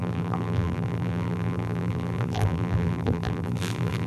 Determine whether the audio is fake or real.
fake